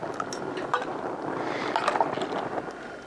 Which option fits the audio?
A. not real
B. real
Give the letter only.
B